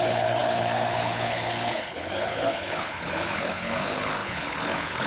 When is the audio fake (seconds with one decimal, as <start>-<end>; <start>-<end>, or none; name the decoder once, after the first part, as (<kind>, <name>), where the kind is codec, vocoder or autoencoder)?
0.0-5.1 (codec, HILCodec)

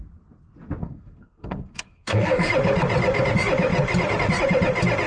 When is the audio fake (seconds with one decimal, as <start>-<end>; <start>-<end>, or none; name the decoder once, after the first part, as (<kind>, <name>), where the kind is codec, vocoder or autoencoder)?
0.8-2.5 (codec, SNAC)

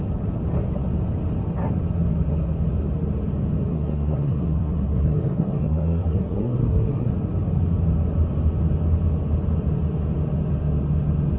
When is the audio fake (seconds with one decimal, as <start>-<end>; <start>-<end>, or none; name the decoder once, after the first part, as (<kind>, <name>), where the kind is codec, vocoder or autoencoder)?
3.7-7.1 (codec, SNAC)

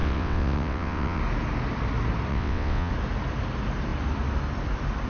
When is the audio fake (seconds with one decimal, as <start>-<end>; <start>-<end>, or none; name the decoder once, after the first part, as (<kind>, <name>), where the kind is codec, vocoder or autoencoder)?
0.0-1.2 (vocoder, WaveNeXt); 2.3-2.9